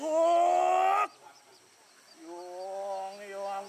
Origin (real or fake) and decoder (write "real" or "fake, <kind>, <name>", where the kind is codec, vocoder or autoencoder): real